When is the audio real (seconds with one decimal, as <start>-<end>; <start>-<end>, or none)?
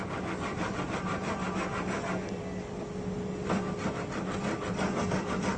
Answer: 0.0-5.6